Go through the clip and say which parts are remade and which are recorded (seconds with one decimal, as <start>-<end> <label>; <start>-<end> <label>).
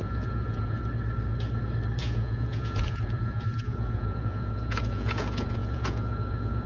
0.0-0.8 remade; 0.8-2.0 recorded; 2.0-6.7 remade